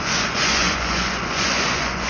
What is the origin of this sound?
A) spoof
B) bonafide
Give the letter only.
A